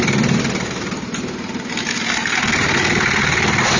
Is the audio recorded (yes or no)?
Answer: yes